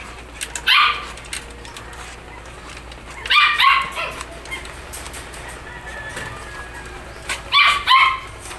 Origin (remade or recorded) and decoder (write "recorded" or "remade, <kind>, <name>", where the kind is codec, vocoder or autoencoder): recorded